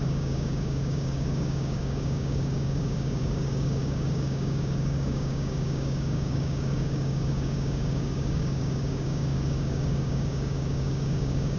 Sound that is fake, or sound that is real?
fake